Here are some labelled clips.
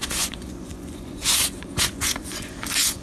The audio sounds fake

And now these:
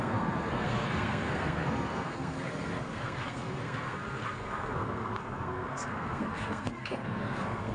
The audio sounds fake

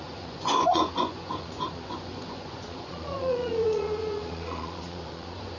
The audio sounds fake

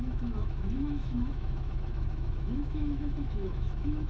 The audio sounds fake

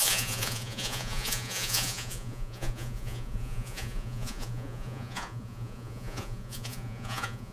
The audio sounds fake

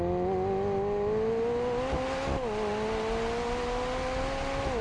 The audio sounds real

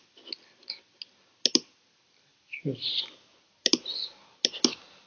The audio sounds real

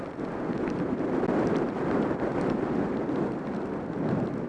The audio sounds real